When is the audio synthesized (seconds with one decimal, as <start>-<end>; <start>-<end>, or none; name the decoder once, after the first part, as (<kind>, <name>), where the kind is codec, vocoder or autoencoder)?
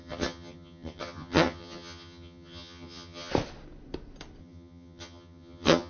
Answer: 0.0-3.3 (vocoder, HiFi-GAN); 4.4-5.9